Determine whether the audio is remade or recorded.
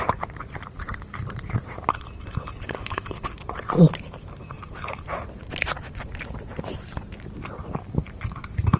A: remade